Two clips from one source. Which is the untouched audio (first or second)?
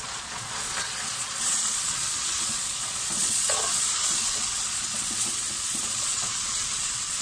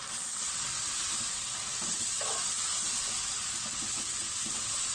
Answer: second